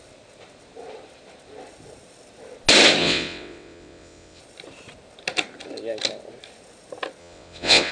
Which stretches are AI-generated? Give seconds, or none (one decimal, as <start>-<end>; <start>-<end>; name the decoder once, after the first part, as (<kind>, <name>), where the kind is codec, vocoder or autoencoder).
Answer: 3.0-4.4 (vocoder, WaveNeXt); 7.2-7.9